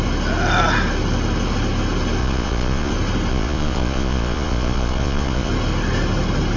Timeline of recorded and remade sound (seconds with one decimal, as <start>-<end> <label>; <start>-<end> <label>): 0.0-2.2 recorded; 2.2-2.9 remade; 2.9-3.3 recorded; 3.3-5.5 remade; 5.5-6.6 recorded